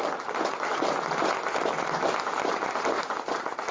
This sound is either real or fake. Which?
real